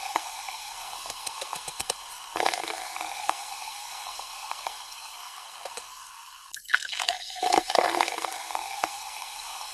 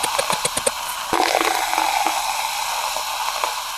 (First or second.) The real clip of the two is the second